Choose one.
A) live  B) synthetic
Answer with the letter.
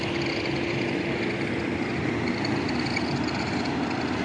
A